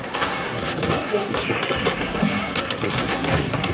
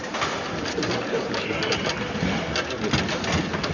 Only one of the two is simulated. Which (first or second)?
first